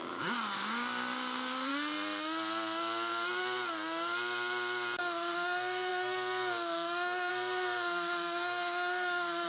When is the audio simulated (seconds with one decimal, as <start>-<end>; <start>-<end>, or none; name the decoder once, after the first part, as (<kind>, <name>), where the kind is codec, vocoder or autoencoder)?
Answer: 0.0-1.7 (codec, DAC); 5.0-9.5